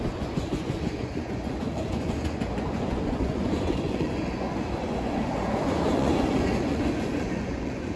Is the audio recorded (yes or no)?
no